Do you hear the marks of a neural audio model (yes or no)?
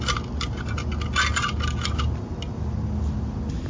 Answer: no